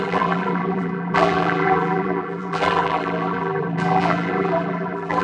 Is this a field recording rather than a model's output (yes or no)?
no